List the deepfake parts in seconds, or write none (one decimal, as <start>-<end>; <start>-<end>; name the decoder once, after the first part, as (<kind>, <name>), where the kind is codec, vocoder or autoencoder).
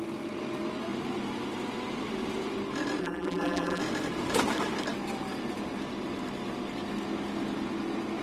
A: 3.0-3.8 (vocoder, BigVGAN v2)